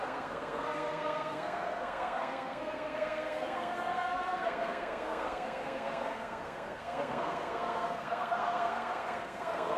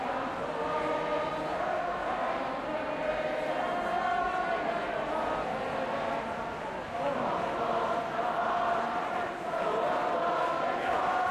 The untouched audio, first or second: second